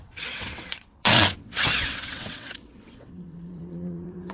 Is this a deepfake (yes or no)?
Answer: yes